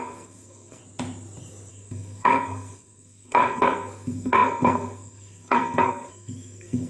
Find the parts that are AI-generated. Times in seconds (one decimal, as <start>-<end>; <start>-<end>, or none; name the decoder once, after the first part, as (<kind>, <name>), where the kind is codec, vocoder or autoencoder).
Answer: 0.0-0.8 (codec, SNAC); 1.7-6.9